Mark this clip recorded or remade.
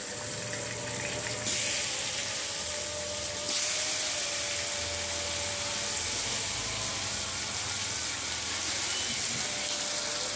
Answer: recorded